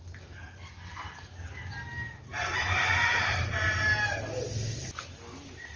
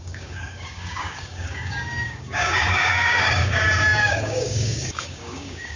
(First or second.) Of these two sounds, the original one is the first